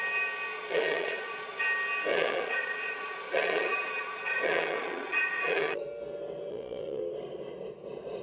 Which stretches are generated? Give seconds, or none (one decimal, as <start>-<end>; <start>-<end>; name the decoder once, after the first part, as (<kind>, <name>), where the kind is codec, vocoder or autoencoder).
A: 0.5-1.6 (vocoder, Vocos); 2.1-5.8; 6.5-7.0